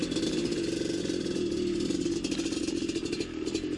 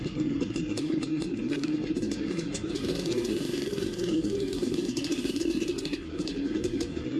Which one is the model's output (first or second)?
second